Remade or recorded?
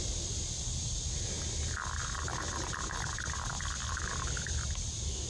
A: recorded